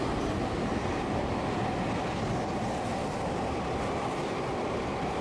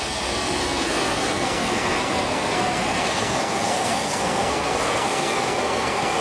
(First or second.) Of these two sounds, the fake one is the second